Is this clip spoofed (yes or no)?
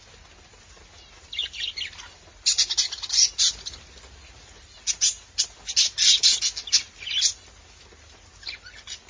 no